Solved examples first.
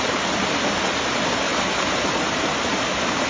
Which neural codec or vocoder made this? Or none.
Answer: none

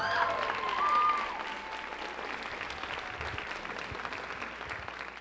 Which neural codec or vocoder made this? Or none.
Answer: none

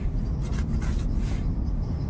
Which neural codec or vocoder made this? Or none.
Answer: vocoder, BigVGAN v2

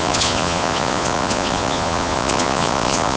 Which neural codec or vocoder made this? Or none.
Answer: vocoder, Vocos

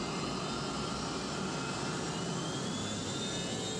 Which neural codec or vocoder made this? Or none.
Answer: none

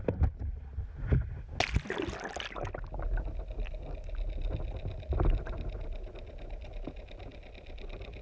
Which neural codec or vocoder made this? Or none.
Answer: none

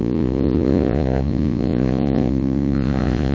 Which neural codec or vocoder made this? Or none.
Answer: vocoder, Vocos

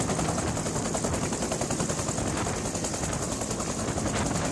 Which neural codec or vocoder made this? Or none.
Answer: none